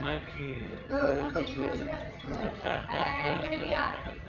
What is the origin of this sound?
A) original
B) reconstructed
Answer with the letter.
B